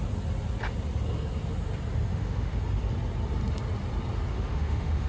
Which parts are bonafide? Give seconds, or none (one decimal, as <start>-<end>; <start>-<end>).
0.0-2.1; 2.6-4.3